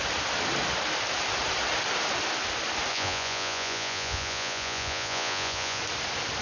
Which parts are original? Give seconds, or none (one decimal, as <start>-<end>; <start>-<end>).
0.0-2.9; 5.8-6.4